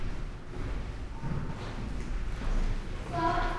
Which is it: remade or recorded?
recorded